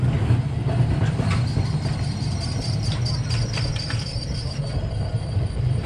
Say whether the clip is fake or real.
fake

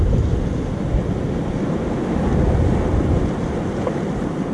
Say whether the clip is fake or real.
real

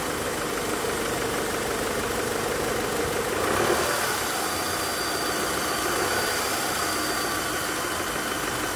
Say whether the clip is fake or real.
real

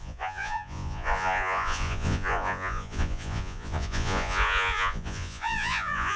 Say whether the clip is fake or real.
fake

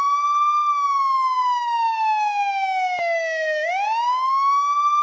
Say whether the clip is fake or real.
fake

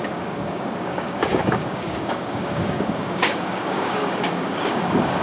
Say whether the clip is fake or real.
fake